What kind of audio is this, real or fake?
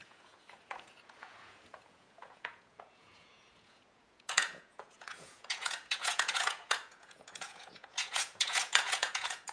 fake